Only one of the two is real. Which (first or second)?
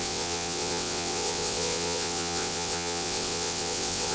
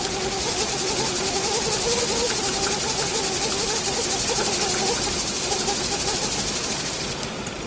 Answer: second